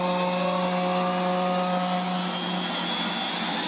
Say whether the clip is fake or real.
real